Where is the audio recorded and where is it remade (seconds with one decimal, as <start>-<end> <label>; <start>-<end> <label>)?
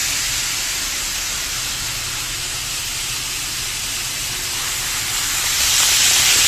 0.0-6.5 recorded